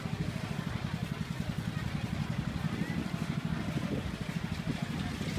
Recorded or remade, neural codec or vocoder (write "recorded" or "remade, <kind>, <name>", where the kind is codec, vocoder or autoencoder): recorded